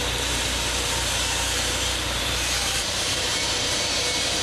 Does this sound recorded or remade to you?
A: remade